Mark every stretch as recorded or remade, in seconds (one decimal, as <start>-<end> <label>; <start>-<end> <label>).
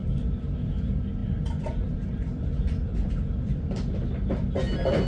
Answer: 0.0-1.2 recorded; 1.2-4.3 remade; 4.3-5.1 recorded